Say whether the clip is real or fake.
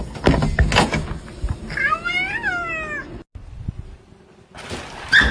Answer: real